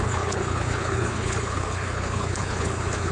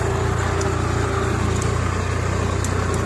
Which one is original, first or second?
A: second